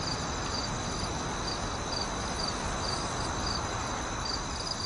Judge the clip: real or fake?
real